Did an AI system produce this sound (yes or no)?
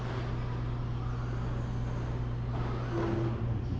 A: no